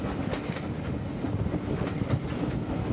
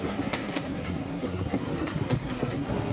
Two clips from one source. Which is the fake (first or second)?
second